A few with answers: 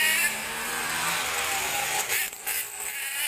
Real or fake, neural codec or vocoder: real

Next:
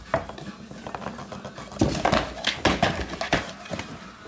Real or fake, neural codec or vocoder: real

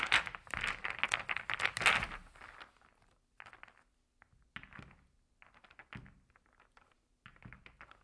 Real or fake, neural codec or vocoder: real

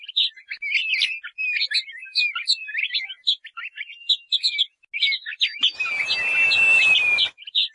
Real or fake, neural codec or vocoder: real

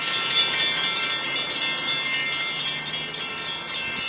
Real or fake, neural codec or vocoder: real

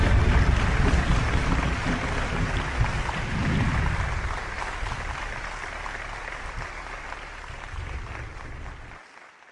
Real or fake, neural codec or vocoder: real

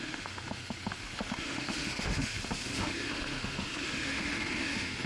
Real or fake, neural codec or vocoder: fake, autoencoder, DAC-VAE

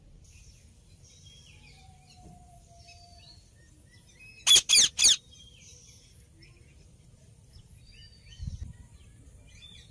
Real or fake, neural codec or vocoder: real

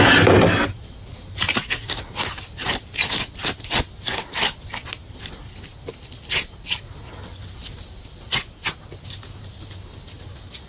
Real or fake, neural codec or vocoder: real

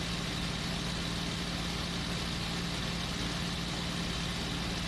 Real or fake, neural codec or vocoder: real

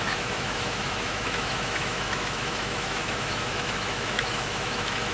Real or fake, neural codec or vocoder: fake, autoencoder, DAC-VAE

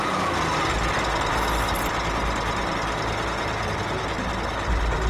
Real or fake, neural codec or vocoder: real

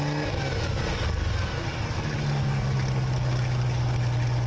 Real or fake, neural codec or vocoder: real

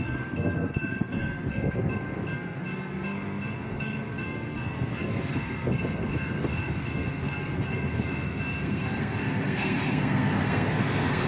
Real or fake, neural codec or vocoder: fake, codec, SNAC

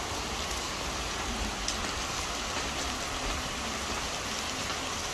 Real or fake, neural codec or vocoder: real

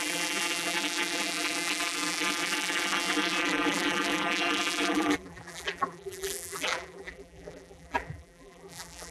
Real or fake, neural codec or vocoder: fake, vocoder, BigVGAN v2